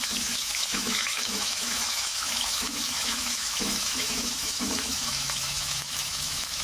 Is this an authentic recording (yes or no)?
no